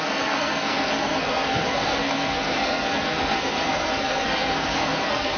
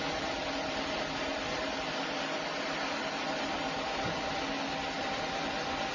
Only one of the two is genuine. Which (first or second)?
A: second